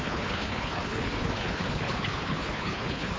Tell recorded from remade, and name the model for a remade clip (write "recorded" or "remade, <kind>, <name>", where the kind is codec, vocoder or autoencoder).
remade, codec, HILCodec